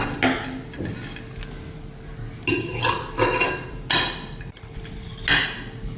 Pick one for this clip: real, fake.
real